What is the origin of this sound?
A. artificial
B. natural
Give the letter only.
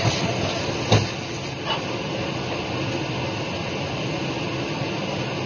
B